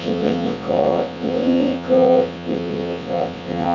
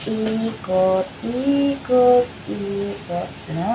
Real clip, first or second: second